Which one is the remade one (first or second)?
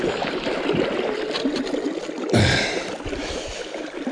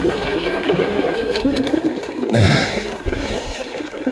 second